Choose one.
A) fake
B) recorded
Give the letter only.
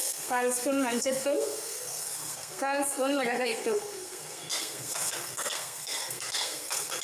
A